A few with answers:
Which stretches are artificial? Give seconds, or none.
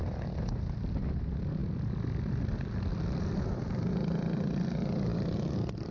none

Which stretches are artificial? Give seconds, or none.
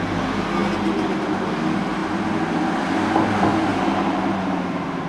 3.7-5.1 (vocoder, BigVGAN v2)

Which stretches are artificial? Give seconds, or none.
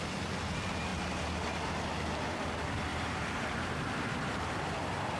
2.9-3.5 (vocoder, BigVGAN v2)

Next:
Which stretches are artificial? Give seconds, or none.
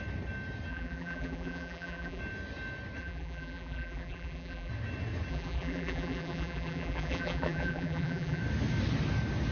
0.7-2.2 (vocoder, BigVGAN v2); 3.0-4.7; 5.3-8.4